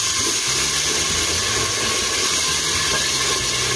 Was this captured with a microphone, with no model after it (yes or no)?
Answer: yes